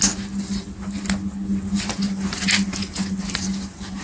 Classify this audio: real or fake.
real